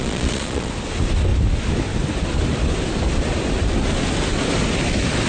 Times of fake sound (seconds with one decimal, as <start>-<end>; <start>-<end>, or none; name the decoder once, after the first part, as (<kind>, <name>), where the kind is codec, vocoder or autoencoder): 0.0-0.7 (vocoder, Vocos)